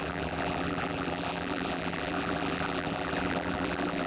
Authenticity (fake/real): fake